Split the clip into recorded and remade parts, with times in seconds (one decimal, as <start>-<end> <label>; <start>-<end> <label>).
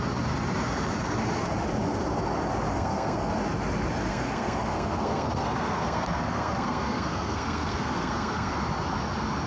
0.0-2.7 recorded; 2.7-3.3 remade; 3.3-4.1 recorded; 4.1-8.6 remade; 8.6-9.5 recorded